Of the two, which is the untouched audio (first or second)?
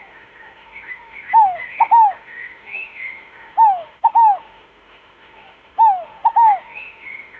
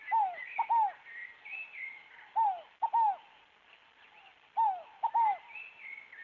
second